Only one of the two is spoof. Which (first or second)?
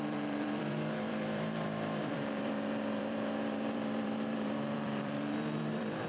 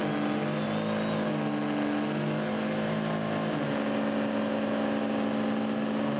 first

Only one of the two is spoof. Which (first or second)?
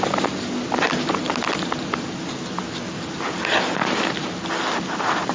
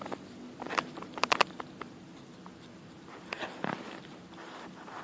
second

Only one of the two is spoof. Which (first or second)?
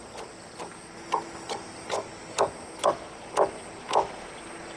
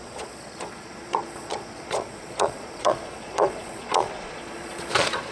second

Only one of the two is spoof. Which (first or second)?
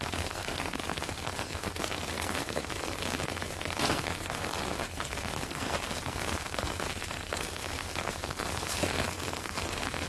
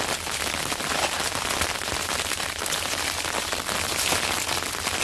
first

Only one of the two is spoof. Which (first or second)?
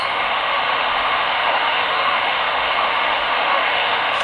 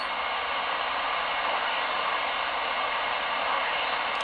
first